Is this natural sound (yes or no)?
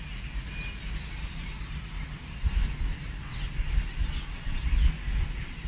yes